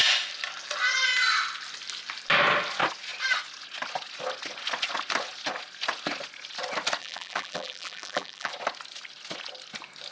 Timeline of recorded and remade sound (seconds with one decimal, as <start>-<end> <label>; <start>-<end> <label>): 0.0-7.0 recorded; 7.0-8.5 remade; 8.5-10.1 recorded